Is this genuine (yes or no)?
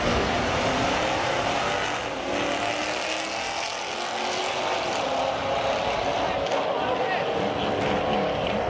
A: yes